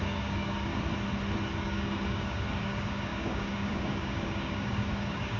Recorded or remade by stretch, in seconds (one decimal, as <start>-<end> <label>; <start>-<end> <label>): 0.0-0.7 remade; 0.7-1.6 recorded; 1.6-5.4 remade